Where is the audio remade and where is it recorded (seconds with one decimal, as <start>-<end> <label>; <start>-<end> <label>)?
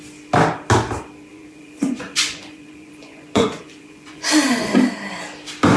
0.0-1.3 recorded; 1.3-4.8 remade; 4.8-5.8 recorded